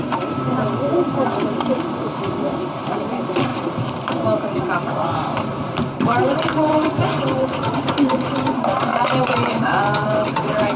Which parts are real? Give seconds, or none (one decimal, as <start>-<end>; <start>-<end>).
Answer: none